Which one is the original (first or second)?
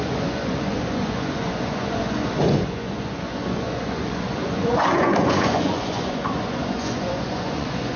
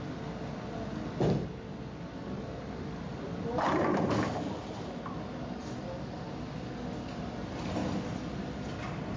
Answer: second